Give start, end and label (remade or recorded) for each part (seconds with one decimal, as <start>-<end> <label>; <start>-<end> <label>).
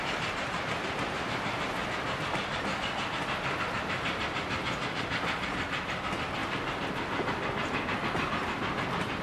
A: 0.0-9.2 recorded